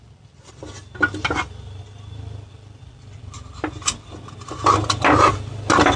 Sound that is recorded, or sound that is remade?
recorded